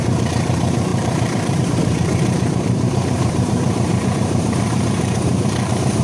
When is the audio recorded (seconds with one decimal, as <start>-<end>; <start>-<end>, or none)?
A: none